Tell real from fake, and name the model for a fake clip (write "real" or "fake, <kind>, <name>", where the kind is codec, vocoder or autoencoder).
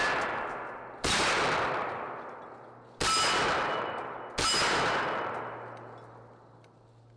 real